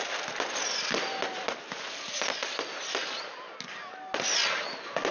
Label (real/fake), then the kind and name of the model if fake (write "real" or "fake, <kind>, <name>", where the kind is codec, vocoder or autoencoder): real